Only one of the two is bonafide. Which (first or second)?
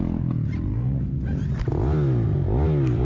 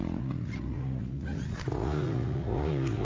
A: first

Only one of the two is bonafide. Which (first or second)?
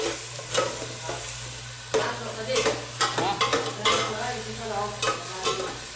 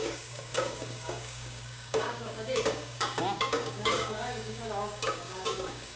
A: first